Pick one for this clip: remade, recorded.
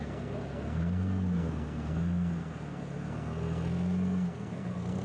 remade